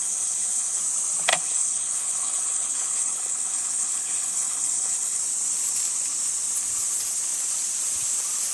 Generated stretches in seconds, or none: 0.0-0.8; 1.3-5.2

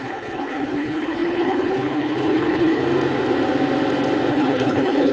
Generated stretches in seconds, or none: 0.0-2.8; 4.3-5.1

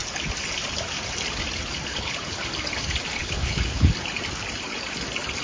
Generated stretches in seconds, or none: 1.9-2.4; 3.2-3.9

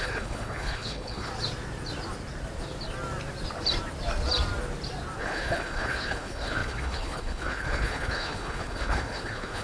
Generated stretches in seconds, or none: 0.0-1.3; 5.2-9.6

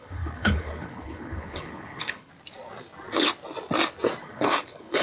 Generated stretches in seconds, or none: 0.0-2.3; 4.2-5.0

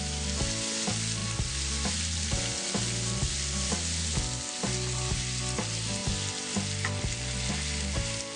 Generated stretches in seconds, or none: none

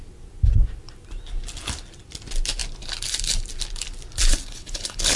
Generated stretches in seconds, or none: 4.3-5.2

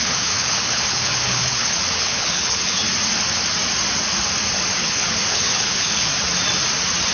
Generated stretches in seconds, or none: 0.0-2.8; 4.8-6.1